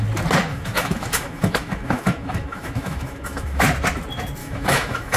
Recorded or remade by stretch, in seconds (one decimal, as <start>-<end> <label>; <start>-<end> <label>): 0.0-0.5 recorded; 0.5-3.6 remade; 3.6-4.4 recorded; 4.4-5.2 remade